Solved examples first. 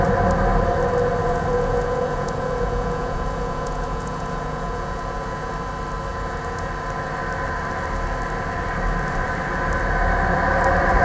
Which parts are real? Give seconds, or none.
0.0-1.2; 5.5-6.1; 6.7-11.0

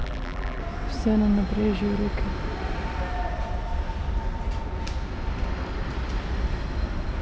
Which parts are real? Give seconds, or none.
0.6-7.2

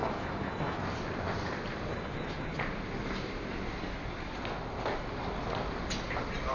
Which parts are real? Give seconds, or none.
0.8-1.9; 2.6-6.5

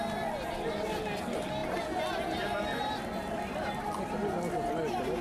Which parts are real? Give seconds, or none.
0.0-5.2

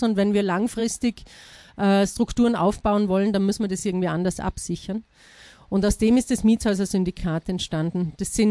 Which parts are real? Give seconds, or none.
0.0-8.5